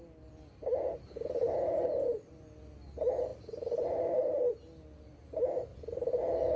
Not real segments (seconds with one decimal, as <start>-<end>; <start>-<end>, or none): 3.3-4.5; 5.7-6.6